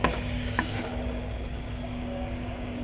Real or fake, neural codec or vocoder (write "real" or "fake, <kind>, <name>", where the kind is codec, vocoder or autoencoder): fake, codec, DAC